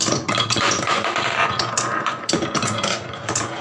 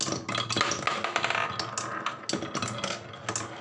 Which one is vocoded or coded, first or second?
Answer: first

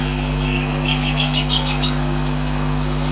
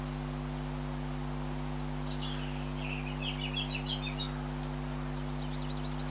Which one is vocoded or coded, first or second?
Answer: first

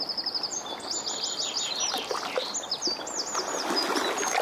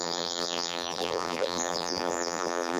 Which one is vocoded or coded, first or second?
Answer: second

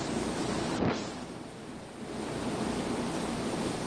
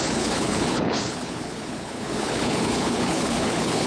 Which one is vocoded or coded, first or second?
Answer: second